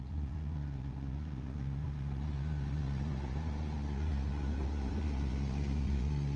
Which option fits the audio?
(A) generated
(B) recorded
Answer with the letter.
A